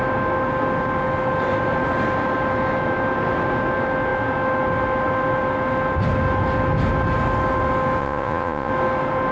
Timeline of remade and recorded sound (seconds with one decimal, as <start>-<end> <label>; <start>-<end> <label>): 0.0-8.0 recorded; 8.0-8.7 remade; 8.7-9.3 recorded